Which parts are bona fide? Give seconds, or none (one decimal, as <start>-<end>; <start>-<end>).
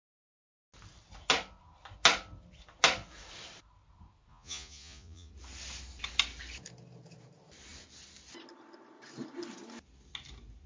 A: 0.0-4.3; 5.3-10.7